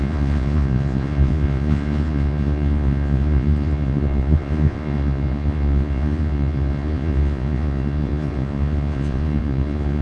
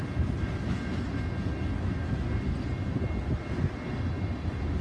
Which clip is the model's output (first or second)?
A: first